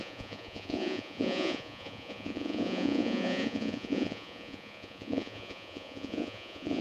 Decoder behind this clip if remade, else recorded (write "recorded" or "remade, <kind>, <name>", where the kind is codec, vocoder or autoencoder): remade, vocoder, Vocos